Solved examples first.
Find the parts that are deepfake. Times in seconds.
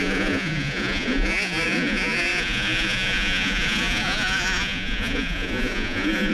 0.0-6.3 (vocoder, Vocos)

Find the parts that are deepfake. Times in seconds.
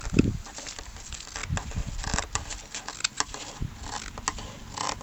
none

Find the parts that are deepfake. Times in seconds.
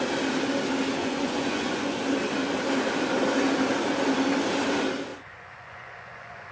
1.0-2.0 (vocoder, Vocos); 5.1-6.5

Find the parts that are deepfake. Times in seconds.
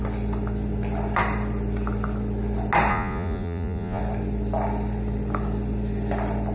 2.9-4.0 (vocoder, Vocos)